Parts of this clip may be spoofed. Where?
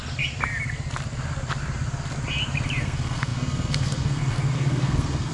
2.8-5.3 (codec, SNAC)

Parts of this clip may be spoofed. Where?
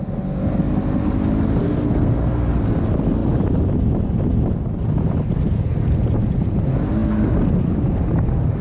1.6-2.1 (codec, SNAC)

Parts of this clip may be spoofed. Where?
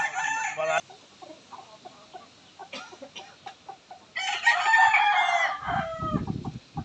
none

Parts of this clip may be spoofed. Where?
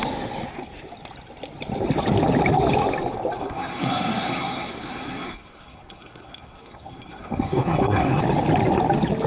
3.4-8.2 (codec, SNAC)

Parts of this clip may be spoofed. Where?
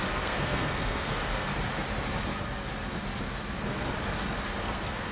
0.0-1.5 (codec, SNAC); 4.6-5.1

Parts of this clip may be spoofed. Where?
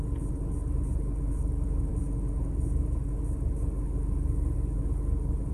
none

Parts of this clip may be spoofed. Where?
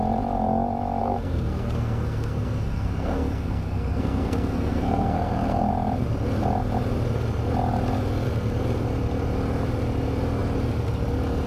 1.0-5.7 (codec, SNAC)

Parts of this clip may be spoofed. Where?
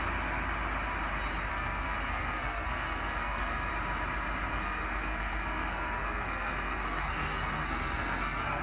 1.5-3.7 (codec, SNAC); 4.5-8.6